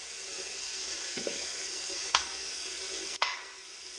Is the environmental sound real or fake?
fake